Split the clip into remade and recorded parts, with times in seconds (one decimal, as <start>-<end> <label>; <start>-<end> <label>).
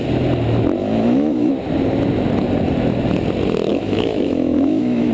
0.0-0.8 recorded; 0.8-1.5 remade; 1.5-3.7 recorded; 3.7-5.1 remade